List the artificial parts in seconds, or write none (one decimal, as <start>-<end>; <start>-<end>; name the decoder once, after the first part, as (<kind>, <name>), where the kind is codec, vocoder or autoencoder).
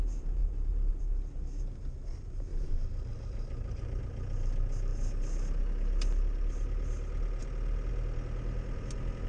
0.4-0.9 (vocoder, BigVGAN v2); 2.5-4.0